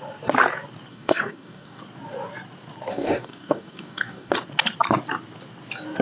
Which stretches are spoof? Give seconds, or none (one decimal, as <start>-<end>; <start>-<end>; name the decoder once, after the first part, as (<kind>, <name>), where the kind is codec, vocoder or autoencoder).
0.9-1.8 (codec, DAC); 2.9-4.3